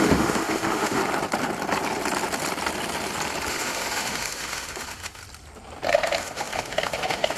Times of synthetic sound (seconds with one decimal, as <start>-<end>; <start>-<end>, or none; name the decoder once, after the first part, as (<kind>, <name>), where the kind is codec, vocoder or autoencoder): 0.0-1.0 (autoencoder, DAC-VAE); 3.5-5.2; 5.9-7.4